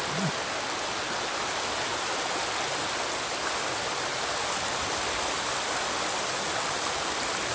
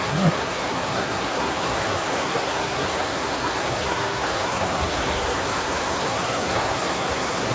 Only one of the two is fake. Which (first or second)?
second